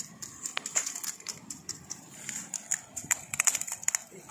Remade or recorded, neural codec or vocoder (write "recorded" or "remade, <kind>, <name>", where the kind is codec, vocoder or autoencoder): recorded